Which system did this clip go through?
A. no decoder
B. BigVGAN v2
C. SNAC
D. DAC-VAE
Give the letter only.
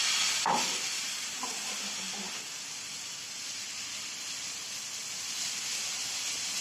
A